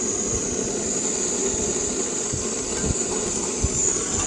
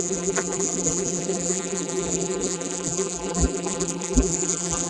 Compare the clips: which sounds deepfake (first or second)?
second